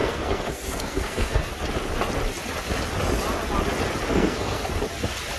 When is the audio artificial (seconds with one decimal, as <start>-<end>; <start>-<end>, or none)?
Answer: 0.0-1.5; 4.1-4.6